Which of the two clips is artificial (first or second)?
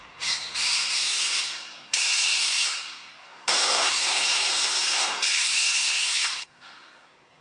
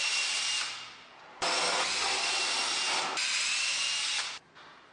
first